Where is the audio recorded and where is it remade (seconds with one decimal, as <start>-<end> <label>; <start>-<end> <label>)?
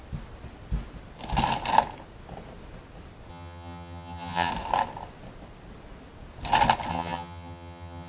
0.0-3.3 recorded; 3.3-4.5 remade; 4.5-6.9 recorded; 6.9-8.1 remade